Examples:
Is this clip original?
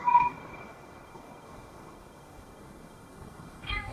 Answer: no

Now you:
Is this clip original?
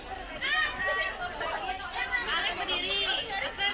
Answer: yes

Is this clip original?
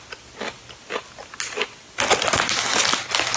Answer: yes